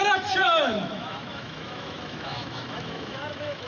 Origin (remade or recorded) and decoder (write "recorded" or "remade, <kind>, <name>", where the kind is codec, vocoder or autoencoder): remade, autoencoder, DAC-VAE